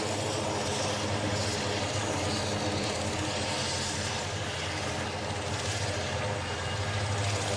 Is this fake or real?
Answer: real